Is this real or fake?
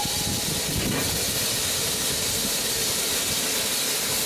real